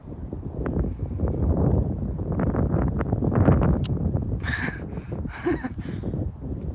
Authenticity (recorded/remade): remade